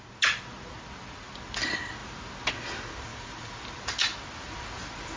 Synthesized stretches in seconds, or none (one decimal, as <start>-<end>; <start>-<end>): 3.1-3.8